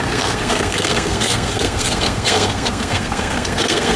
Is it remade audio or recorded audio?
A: remade